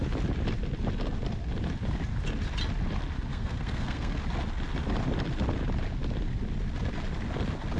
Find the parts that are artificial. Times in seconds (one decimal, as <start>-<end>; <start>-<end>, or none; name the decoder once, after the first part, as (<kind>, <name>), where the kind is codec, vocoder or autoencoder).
3.3-4.2 (codec, SNAC)